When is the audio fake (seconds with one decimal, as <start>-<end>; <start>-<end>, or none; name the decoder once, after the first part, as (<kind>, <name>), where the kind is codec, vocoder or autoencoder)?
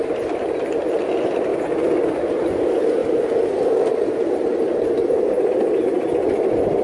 none